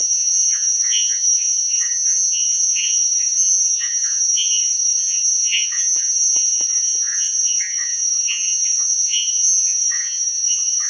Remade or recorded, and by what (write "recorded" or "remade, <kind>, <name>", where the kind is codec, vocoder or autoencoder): remade, vocoder, Vocos